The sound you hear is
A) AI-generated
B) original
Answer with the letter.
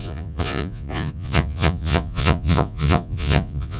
A